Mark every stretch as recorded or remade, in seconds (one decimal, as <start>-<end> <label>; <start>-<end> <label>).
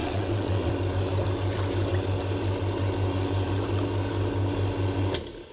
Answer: 0.0-0.7 remade; 0.7-5.5 recorded